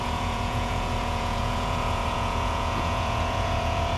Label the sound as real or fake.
fake